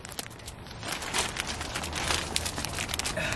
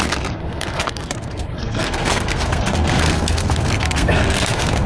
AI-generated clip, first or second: second